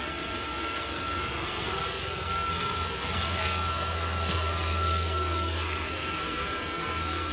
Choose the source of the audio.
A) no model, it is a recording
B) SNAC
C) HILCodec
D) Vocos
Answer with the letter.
B